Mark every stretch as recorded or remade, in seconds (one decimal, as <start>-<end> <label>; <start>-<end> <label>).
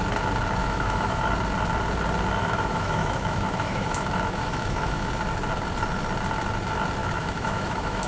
0.0-0.6 recorded; 0.6-1.2 remade; 1.2-2.4 recorded; 2.4-5.1 remade; 5.1-7.0 recorded; 7.0-8.1 remade